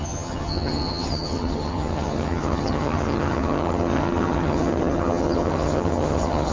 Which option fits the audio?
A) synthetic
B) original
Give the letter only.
A